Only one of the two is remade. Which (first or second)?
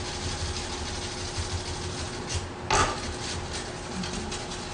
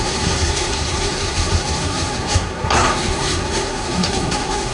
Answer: second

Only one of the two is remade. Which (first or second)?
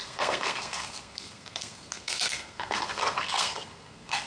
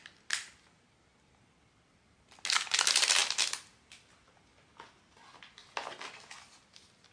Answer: first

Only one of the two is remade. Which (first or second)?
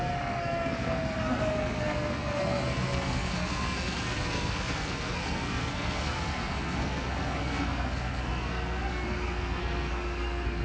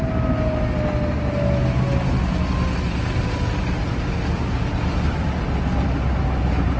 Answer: first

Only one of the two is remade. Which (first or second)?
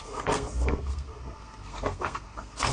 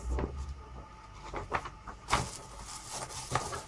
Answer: first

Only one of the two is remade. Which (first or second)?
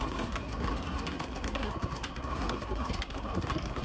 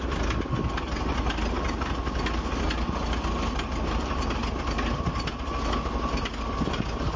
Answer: first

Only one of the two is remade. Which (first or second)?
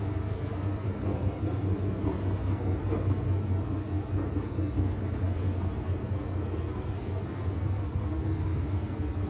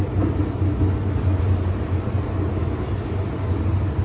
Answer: first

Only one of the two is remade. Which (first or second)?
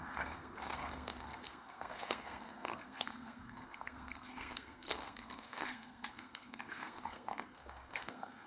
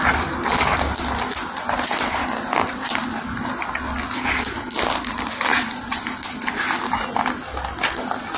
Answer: first